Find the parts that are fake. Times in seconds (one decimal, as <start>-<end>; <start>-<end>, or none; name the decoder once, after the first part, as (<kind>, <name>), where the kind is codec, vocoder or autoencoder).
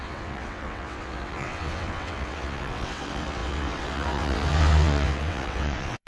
0.0-6.1 (vocoder, WaveNeXt)